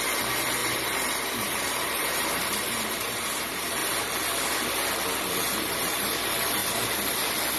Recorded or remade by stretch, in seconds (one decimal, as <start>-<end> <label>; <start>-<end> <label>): 0.0-3.8 remade; 3.8-5.4 recorded; 5.4-6.6 remade; 6.6-7.6 recorded